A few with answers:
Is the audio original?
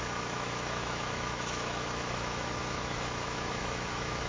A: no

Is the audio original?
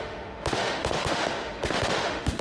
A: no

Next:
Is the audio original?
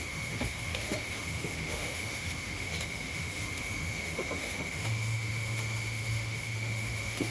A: no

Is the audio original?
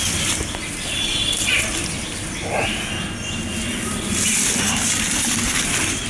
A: yes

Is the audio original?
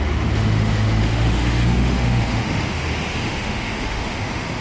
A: no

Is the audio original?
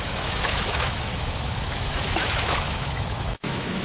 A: no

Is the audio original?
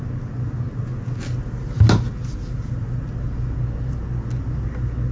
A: yes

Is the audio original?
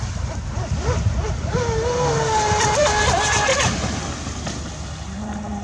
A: yes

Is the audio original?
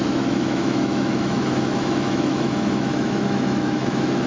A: no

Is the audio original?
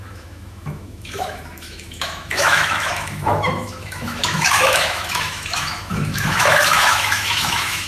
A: no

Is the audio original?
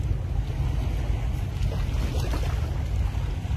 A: yes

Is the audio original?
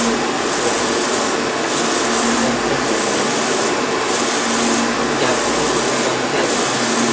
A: yes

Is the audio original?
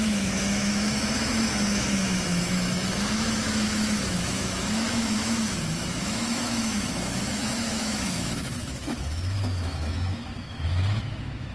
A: no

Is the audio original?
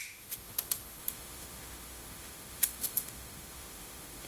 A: no